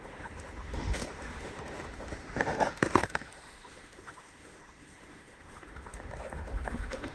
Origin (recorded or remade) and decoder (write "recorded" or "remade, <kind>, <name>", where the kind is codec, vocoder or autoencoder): remade, autoencoder, DAC-VAE